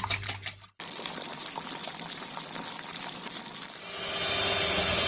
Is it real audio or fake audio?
real